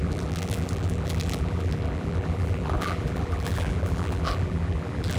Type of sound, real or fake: fake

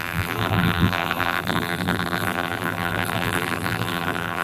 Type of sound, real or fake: fake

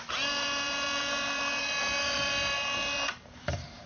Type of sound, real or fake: fake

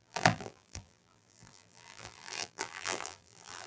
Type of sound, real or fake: fake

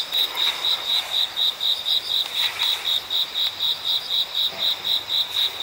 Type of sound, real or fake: fake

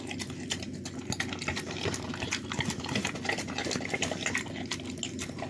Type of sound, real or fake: real